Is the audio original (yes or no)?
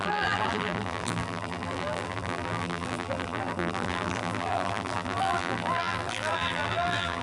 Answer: no